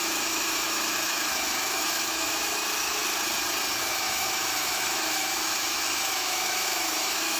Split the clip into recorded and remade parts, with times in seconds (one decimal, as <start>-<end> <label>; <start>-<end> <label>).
0.0-3.0 remade; 3.0-3.8 recorded; 3.8-7.4 remade